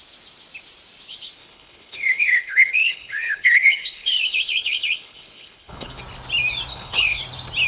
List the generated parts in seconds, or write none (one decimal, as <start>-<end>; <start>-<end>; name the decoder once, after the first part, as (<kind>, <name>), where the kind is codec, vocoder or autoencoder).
1.4-6.0 (codec, HILCodec); 6.7-7.2